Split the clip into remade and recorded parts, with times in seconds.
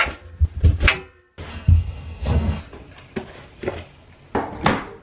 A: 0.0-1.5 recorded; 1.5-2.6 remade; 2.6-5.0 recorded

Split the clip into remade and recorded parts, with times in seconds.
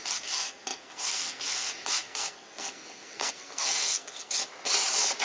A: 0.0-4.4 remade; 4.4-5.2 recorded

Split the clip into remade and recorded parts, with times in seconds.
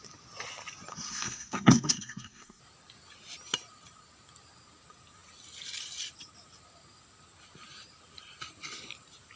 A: 0.0-0.9 recorded; 0.9-2.6 remade; 2.6-9.4 recorded